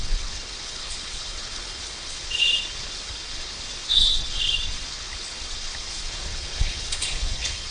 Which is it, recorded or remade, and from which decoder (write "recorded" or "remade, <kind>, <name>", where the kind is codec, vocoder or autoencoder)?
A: remade, codec, HILCodec